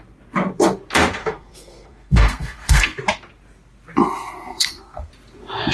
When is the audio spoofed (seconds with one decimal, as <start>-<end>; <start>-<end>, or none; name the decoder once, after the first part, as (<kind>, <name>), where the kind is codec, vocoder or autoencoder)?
1.2-3.0 (codec, SNAC); 4.5-5.1